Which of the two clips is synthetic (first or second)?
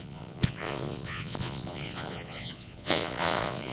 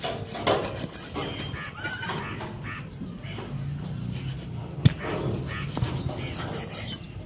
first